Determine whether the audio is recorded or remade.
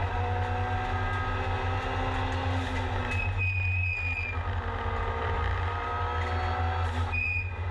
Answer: recorded